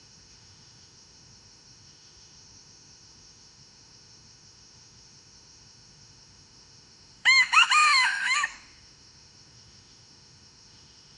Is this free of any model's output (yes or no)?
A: no